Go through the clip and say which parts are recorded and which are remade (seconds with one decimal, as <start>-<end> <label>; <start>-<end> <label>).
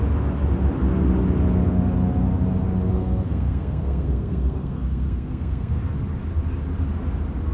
0.0-2.9 recorded; 2.9-5.8 remade; 5.8-7.5 recorded